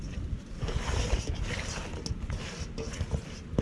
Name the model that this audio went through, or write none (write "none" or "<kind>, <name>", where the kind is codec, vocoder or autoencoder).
none